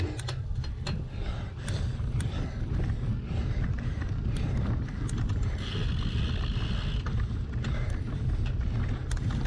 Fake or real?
real